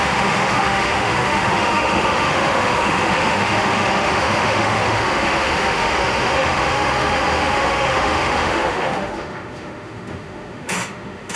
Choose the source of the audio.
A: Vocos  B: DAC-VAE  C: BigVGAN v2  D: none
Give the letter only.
B